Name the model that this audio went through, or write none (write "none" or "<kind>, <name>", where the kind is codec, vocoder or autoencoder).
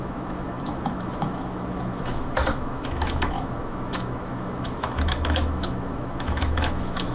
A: autoencoder, DAC-VAE